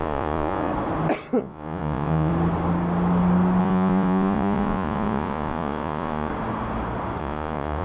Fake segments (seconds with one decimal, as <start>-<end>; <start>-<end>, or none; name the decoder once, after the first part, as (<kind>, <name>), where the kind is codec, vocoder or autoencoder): 0.0-0.7 (vocoder, Vocos); 1.4-2.3; 3.6-6.3; 7.2-7.8